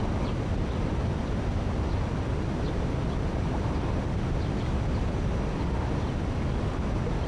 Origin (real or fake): real